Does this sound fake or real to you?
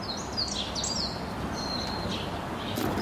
real